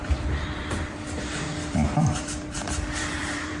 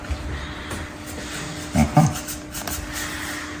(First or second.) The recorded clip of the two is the second